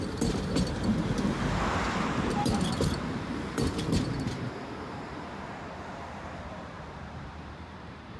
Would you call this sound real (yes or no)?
no